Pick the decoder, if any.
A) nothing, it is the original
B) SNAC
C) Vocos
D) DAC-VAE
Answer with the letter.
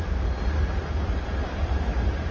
A